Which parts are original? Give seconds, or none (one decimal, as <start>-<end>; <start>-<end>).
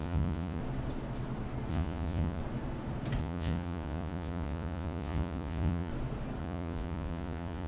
0.6-1.7; 2.4-3.2; 5.9-6.4